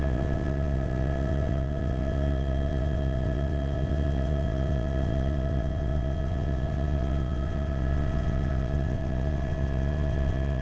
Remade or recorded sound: remade